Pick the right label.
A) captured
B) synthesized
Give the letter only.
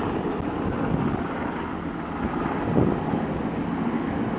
A